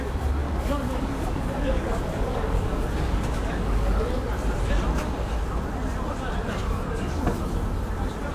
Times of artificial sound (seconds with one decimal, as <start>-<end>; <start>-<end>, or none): 0.4-4.3; 6.6-7.4